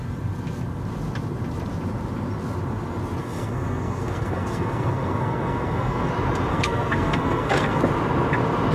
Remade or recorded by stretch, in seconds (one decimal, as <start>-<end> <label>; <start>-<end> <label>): 0.0-3.2 recorded; 3.2-6.1 remade; 6.1-6.5 recorded; 6.5-7.8 remade; 7.8-8.7 recorded